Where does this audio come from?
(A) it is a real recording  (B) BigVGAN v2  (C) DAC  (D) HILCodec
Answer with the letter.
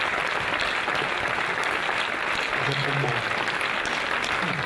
A